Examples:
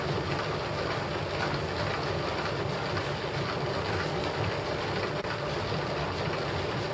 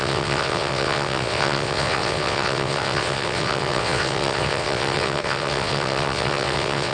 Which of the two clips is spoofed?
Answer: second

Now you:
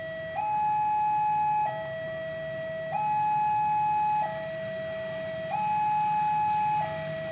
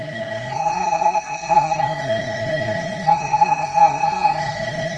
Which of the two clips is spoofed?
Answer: second